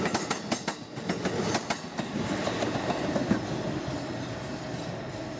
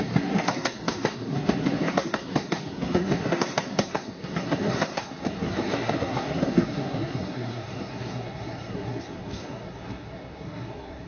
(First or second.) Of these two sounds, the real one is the first